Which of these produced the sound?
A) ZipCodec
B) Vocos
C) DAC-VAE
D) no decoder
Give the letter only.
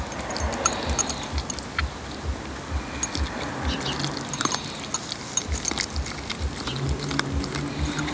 D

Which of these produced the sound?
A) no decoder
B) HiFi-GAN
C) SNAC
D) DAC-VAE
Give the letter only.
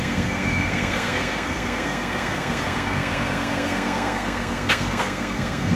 C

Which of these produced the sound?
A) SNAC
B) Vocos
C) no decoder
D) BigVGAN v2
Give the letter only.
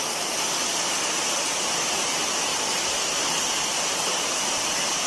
C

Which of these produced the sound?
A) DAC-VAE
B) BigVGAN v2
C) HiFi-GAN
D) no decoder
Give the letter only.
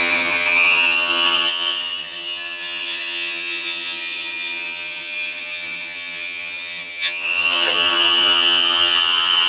C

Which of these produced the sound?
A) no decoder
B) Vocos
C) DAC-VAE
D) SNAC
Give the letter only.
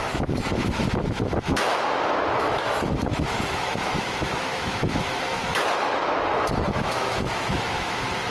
C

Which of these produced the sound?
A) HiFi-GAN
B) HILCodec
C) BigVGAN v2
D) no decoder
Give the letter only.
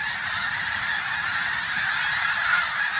C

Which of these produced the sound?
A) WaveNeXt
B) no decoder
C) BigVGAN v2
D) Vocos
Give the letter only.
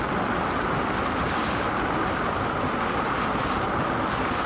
B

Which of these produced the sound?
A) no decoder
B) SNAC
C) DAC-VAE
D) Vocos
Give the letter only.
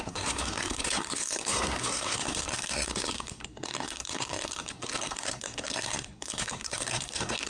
B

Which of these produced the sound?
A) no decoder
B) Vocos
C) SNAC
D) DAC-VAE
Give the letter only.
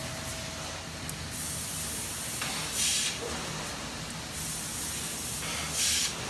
A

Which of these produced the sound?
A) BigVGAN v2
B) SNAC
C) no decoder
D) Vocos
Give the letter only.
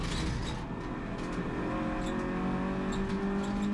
C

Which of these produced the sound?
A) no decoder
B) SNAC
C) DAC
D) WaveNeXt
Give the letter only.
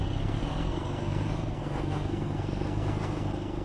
B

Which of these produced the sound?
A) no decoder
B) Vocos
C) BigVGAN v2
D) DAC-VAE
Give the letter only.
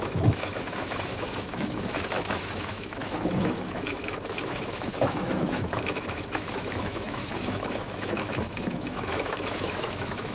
D